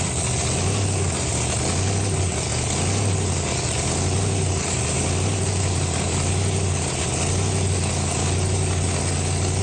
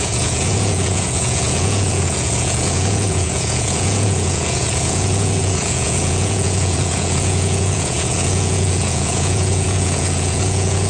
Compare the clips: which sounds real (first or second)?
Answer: first